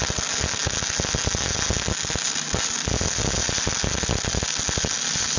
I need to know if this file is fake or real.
real